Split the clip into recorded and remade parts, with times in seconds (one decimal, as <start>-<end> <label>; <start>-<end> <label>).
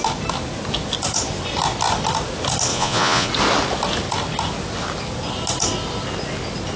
0.0-2.7 recorded; 2.7-3.3 remade; 3.3-6.8 recorded